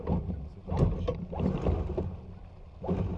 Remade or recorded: recorded